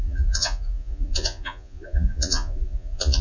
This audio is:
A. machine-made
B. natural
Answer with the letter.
A